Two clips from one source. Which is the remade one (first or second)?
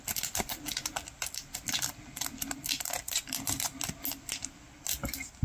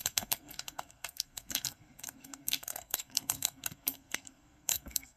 second